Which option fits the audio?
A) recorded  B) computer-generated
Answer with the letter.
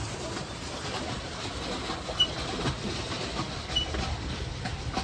A